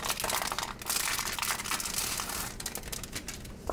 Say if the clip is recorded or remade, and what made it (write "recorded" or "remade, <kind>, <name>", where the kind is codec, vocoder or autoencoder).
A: recorded